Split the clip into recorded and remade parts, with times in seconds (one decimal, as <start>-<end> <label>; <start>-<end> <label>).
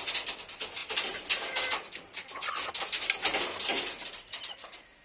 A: 0.0-5.0 recorded